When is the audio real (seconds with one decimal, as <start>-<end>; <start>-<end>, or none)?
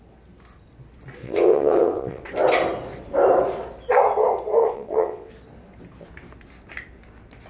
0.0-1.2; 2.2-4.6; 5.3-7.5